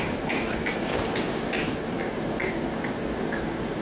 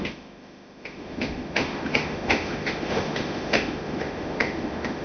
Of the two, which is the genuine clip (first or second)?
first